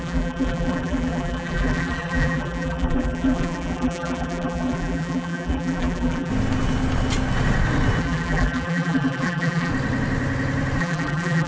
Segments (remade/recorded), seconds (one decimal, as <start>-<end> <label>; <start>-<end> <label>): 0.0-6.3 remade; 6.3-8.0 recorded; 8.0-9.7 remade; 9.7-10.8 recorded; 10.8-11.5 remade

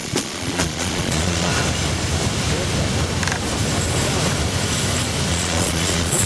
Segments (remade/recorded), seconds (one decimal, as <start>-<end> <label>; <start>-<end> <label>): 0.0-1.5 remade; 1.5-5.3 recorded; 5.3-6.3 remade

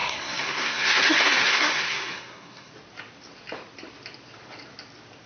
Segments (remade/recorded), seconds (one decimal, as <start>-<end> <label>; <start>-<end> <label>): 0.0-2.7 remade; 2.7-5.3 recorded

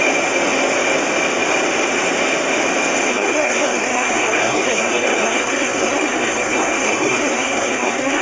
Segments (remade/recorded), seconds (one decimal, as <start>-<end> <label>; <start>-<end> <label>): 0.0-3.1 recorded; 3.1-8.2 remade